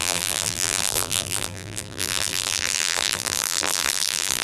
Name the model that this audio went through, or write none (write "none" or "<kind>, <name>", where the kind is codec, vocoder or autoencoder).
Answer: vocoder, BigVGAN v2